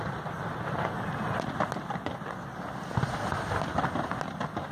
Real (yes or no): yes